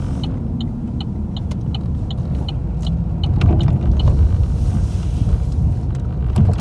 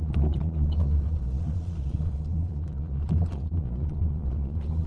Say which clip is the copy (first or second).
second